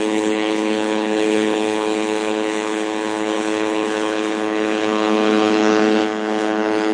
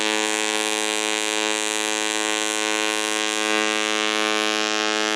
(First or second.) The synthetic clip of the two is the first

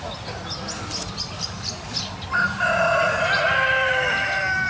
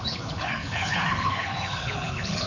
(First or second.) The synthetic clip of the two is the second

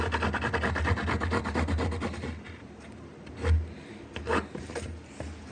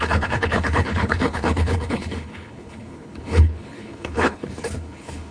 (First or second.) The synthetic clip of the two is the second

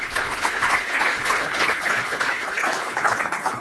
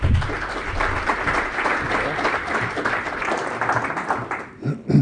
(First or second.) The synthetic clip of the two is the first